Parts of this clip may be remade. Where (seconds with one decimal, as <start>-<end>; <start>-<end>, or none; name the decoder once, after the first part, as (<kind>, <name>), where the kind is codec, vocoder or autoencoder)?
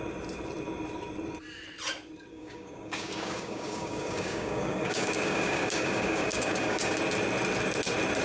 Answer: 2.3-7.0 (codec, DAC)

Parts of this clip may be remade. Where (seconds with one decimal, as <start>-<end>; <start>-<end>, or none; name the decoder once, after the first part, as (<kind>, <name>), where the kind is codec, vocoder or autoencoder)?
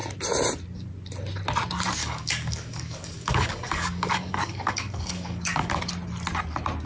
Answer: 2.0-5.8 (codec, DAC)